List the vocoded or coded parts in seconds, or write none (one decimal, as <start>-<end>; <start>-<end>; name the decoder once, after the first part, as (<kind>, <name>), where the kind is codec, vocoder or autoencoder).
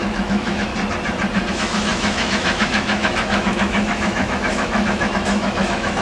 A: 0.0-0.7 (autoencoder, DAC-VAE); 1.5-6.0